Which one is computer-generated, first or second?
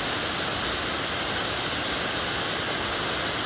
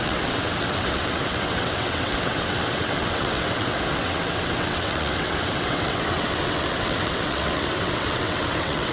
second